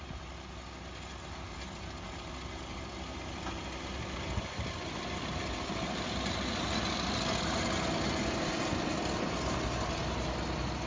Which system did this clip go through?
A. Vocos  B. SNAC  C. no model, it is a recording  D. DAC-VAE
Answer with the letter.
C